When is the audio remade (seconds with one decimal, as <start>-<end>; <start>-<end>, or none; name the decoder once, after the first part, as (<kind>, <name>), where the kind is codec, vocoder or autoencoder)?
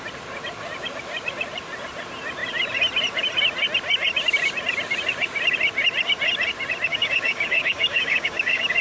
6.9-8.8 (codec, DAC)